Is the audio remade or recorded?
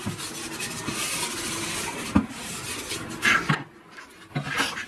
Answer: recorded